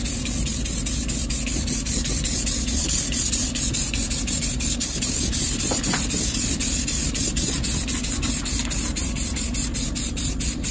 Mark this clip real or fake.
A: real